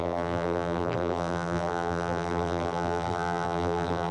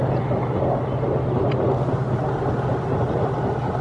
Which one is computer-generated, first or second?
first